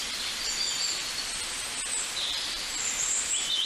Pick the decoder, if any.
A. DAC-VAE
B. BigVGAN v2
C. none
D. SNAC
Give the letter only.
B